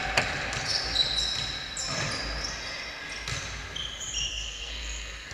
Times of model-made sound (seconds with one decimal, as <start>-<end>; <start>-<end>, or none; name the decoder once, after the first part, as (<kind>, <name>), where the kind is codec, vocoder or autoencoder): 4.3-5.3 (codec, SNAC)